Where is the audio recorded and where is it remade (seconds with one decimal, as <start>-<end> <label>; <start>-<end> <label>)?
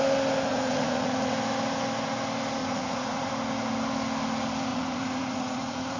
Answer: 0.0-0.5 recorded; 0.5-1.3 remade; 1.3-2.6 recorded; 2.6-3.3 remade; 3.3-4.7 recorded; 4.7-6.0 remade